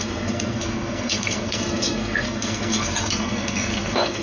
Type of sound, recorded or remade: remade